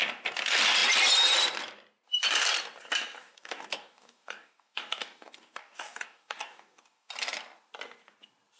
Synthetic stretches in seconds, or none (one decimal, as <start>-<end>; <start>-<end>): 3.2-7.1